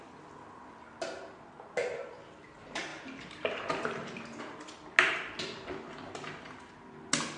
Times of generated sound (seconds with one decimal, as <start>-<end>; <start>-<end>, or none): none